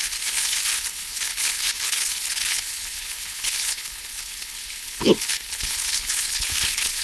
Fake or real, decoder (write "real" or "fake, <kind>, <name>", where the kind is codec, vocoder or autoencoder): fake, codec, HILCodec